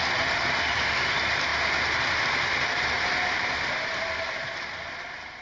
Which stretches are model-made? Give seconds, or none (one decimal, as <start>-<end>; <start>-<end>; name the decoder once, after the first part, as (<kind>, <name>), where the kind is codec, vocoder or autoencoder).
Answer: none